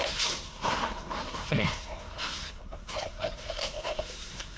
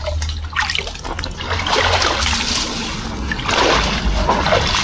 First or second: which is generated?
first